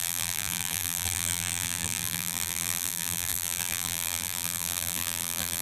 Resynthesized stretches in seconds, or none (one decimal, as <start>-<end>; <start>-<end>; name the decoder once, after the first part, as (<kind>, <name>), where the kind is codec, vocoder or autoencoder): 0.0-5.6 (vocoder, BigVGAN v2)